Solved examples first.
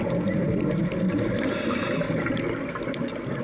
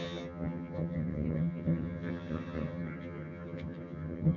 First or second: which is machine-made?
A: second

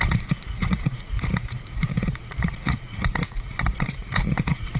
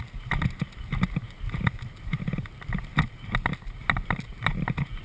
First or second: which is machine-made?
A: first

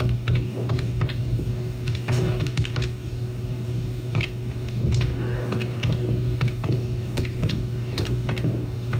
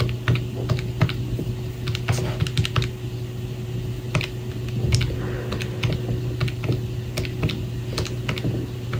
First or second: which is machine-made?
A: first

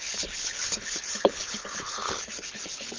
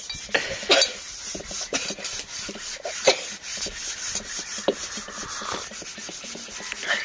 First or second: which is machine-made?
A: first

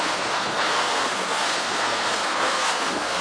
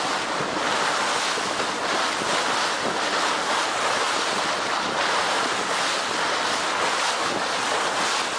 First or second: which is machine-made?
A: first